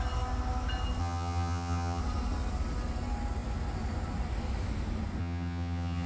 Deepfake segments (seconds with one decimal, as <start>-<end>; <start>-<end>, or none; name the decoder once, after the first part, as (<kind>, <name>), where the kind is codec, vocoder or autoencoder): 1.0-2.0 (vocoder, HiFi-GAN); 5.2-6.1